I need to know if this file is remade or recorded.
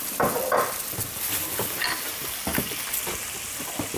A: recorded